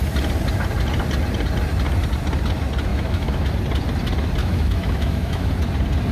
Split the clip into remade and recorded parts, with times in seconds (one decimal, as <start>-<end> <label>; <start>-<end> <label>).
0.0-2.9 recorded; 2.9-3.5 remade; 3.5-4.4 recorded; 4.4-5.5 remade; 5.5-6.1 recorded